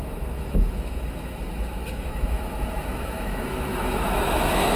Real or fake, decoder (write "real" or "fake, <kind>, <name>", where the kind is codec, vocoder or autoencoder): fake, autoencoder, DAC-VAE